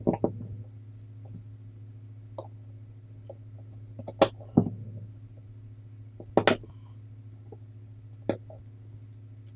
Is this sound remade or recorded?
recorded